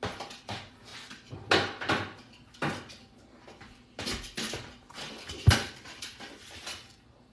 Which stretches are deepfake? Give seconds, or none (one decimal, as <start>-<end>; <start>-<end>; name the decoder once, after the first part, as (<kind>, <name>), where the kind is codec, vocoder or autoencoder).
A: none